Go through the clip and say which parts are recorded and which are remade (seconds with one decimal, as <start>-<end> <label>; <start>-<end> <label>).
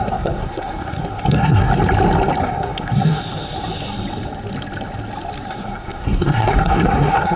0.0-1.7 remade; 1.7-2.4 recorded; 2.4-3.2 remade; 3.2-5.5 recorded; 5.5-7.4 remade